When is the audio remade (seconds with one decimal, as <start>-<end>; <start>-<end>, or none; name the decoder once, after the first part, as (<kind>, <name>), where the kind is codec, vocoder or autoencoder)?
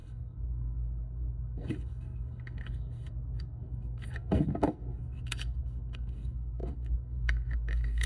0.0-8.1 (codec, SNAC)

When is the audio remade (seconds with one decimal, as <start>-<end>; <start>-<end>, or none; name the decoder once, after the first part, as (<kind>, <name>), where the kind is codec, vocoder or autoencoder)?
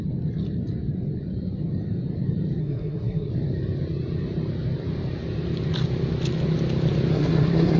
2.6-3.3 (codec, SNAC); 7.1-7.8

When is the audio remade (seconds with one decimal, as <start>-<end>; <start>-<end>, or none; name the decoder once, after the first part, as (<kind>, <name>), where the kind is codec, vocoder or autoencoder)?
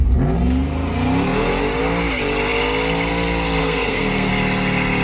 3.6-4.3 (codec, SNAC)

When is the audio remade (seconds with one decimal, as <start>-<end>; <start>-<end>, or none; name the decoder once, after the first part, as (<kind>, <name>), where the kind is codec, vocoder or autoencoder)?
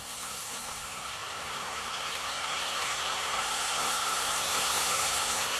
0.0-5.6 (codec, SNAC)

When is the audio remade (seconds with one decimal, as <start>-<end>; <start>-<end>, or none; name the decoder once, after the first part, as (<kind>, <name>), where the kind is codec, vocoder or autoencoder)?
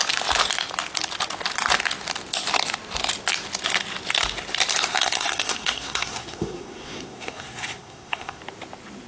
4.9-8.4 (codec, SNAC)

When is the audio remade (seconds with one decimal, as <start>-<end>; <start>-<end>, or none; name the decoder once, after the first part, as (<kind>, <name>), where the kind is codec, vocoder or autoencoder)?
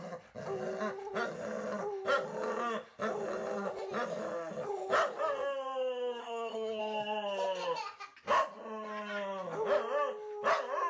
6.2-6.8 (codec, SNAC)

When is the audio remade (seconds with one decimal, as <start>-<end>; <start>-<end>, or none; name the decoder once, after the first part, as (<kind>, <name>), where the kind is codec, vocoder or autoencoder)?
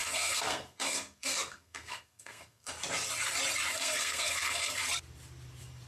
0.0-2.7 (codec, SNAC); 3.7-4.8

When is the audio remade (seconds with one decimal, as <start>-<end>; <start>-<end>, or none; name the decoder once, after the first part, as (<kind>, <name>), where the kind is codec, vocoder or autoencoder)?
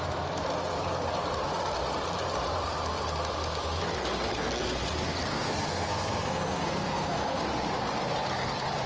5.3-7.4 (codec, SNAC)